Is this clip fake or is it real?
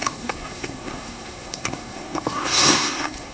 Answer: fake